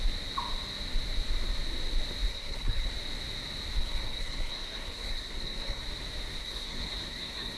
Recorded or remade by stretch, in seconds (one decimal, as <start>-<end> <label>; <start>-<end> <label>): 0.0-2.3 recorded; 2.3-2.9 remade; 2.9-3.8 recorded; 3.8-5.8 remade; 5.8-6.4 recorded; 6.4-7.6 remade